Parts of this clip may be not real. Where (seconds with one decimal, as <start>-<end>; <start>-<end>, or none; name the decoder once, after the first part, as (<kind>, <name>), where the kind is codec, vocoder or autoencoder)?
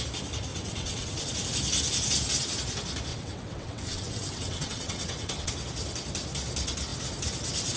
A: 0.5-1.2 (vocoder, WaveNeXt); 3.1-5.5